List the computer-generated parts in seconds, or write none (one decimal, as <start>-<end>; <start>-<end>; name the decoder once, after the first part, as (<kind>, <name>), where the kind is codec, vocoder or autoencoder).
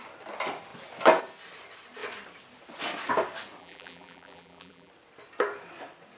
3.6-4.9 (vocoder, BigVGAN v2)